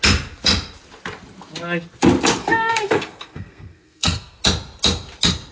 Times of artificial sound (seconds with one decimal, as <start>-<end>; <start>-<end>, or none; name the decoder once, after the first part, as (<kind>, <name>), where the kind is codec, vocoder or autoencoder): 2.4-4.4 (codec, SNAC)